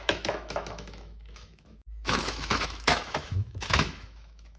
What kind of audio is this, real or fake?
fake